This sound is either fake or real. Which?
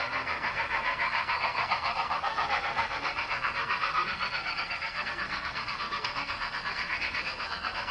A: fake